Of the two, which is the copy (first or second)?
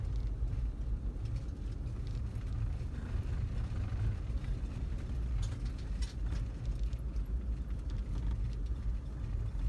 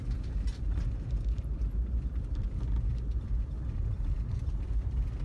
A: second